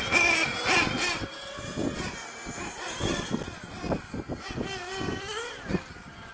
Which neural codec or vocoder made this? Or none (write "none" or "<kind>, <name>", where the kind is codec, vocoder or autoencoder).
none